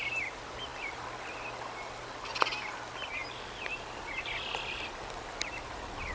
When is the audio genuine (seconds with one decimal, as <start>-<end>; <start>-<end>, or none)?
0.0-6.1